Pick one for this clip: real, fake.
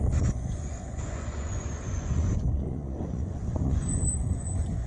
fake